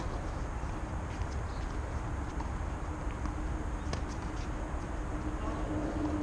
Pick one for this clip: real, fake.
real